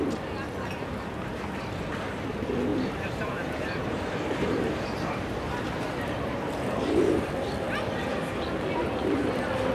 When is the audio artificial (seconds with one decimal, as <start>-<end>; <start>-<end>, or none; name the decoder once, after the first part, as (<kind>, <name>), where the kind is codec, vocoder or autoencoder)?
0.9-1.4 (vocoder, BigVGAN v2); 2.7-7.3